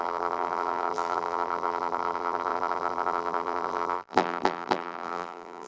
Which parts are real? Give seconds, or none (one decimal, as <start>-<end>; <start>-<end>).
none